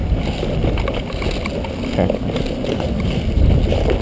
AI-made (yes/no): no